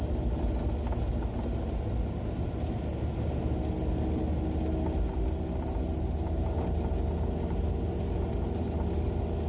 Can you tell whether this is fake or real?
real